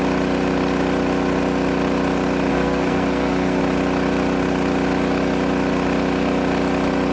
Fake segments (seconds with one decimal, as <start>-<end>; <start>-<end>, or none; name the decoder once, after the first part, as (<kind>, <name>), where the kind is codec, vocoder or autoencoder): 2.5-3.6 (codec, SNAC)